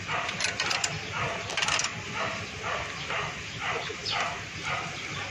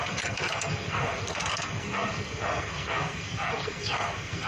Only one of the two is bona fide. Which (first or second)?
first